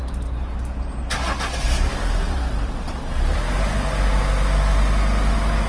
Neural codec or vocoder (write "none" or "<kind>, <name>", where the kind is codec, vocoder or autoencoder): none